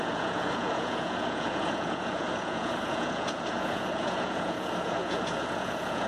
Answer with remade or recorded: remade